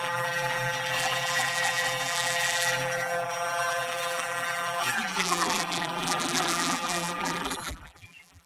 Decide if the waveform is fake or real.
fake